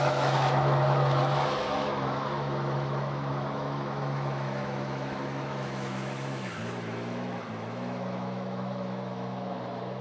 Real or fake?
fake